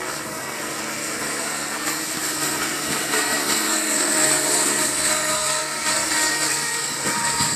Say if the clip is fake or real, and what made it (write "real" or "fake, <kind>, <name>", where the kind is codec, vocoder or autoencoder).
fake, codec, SNAC